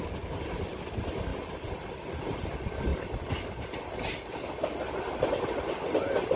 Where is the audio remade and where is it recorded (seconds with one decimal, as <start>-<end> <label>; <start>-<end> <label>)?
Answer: 0.0-1.3 recorded; 1.3-2.4 remade; 2.4-6.4 recorded